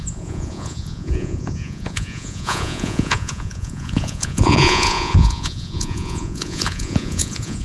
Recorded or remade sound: remade